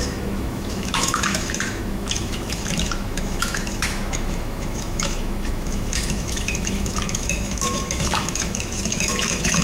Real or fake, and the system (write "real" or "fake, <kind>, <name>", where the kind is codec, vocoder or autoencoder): fake, autoencoder, DAC-VAE